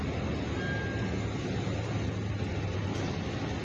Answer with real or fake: real